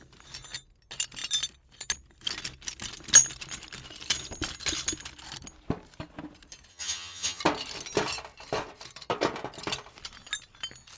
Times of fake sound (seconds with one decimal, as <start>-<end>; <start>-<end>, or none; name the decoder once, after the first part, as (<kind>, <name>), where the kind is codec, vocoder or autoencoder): 6.7-7.4 (vocoder, HiFi-GAN)